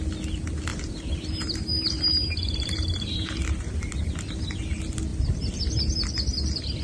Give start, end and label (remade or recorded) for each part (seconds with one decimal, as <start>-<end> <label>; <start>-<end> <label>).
0.0-0.7 recorded; 0.7-4.6 remade; 4.6-6.8 recorded